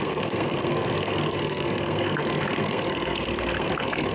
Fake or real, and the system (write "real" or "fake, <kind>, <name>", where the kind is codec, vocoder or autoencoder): fake, codec, SNAC